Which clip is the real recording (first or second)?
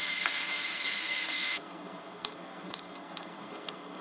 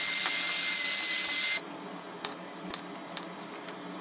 second